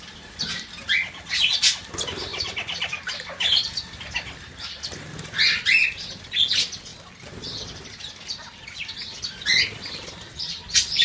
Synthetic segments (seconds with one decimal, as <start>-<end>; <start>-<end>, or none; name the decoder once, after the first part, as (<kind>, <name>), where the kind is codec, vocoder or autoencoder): 6.9-10.5 (vocoder, BigVGAN v2)